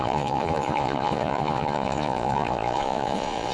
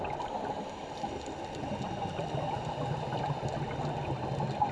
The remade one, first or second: first